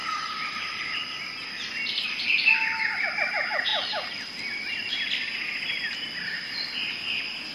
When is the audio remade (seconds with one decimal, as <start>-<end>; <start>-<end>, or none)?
0.0-1.0; 3.7-4.9